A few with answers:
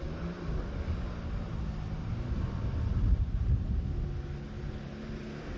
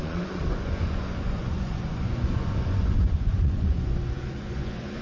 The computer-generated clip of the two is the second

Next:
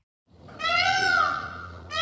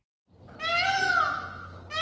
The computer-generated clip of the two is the first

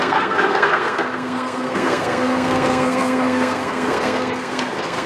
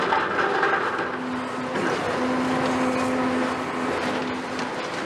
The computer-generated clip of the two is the first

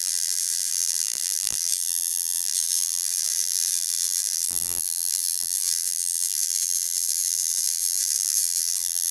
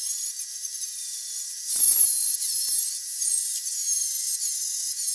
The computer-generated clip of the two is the first